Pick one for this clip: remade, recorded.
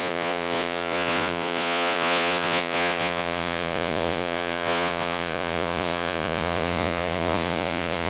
remade